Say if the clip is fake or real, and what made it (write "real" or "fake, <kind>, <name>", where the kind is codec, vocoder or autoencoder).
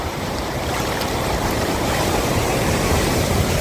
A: fake, vocoder, BigVGAN v2